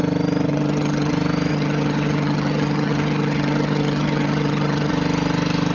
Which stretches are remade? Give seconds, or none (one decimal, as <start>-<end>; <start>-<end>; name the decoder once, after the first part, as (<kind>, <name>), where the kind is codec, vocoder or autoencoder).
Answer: 0.5-1.1 (vocoder, HiFi-GAN); 1.5-4.9